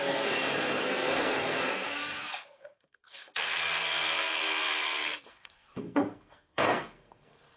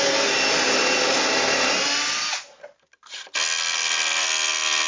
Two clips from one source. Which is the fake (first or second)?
first